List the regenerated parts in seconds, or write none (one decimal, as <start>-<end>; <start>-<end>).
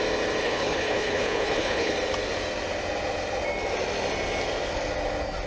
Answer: 0.4-1.9